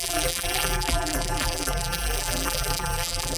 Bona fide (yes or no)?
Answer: no